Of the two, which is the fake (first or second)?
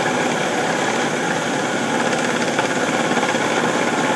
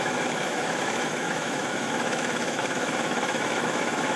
second